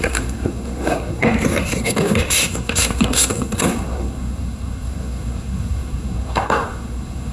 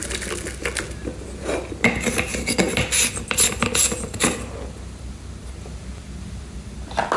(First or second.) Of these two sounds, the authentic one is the second